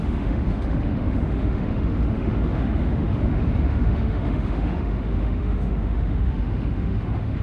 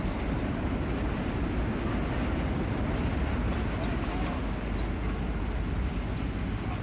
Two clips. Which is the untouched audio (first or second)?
second